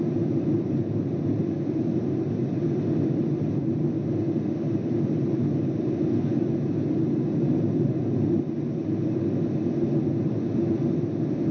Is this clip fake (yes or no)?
no